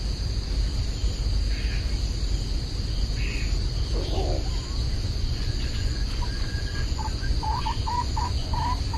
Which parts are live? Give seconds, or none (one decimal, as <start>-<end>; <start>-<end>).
0.0-4.8; 8.6-9.0